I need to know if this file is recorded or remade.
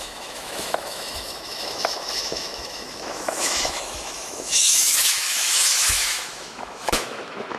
remade